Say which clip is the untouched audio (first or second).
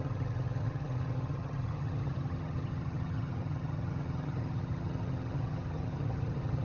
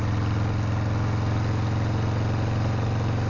second